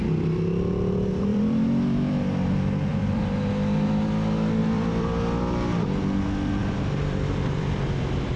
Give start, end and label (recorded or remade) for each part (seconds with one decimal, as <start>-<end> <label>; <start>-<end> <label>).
0.0-1.3 recorded; 1.3-2.5 remade; 2.5-2.9 recorded; 2.9-3.5 remade; 3.5-4.6 recorded; 4.6-5.4 remade; 5.4-6.6 recorded; 6.6-8.4 remade